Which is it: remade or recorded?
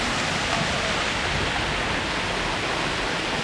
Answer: recorded